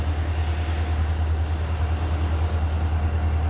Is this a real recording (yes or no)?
yes